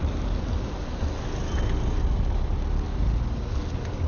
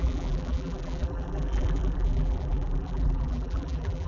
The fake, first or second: second